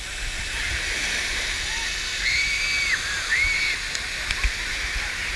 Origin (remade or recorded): recorded